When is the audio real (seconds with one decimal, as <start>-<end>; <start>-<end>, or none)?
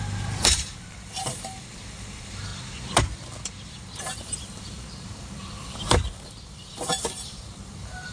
2.5-4.0